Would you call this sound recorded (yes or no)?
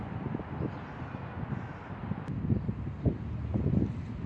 yes